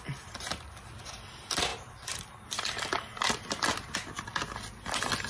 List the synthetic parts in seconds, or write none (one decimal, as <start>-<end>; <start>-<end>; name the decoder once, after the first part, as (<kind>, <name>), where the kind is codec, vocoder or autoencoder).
1.7-2.6 (vocoder, BigVGAN v2)

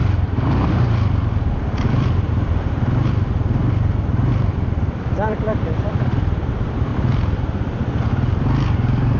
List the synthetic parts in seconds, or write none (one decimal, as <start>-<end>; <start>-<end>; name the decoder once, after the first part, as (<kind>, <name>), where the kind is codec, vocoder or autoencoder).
0.0-6.9 (vocoder, BigVGAN v2); 8.0-9.2

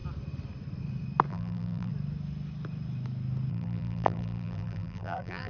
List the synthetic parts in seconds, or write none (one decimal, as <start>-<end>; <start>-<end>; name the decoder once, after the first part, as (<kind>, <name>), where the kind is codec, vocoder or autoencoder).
1.3-1.9 (vocoder, BigVGAN v2); 3.5-5.5

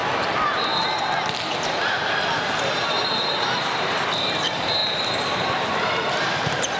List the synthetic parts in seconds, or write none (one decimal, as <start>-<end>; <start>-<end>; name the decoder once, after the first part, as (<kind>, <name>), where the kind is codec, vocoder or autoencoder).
3.4-4.8 (vocoder, BigVGAN v2); 6.1-6.8